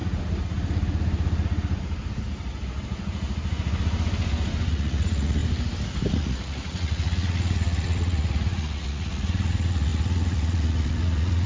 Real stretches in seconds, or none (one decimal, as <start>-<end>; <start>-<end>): 0.0-4.7; 5.4-6.1